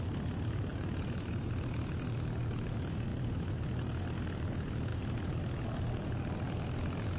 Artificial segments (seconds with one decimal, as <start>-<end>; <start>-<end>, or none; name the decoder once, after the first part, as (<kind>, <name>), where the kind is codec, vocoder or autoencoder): 0.7-1.5 (vocoder, BigVGAN v2); 3.1-4.2; 4.9-5.4